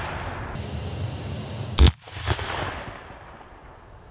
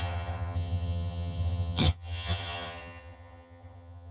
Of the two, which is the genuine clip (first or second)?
first